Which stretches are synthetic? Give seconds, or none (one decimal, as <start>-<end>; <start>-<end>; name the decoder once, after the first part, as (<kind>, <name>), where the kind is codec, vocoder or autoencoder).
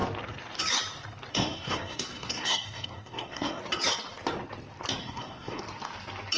1.3-3.6 (codec, SNAC); 5.0-5.6